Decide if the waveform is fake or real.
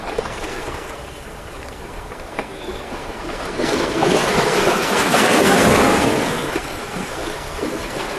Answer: fake